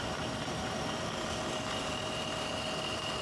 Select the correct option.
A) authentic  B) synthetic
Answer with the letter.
B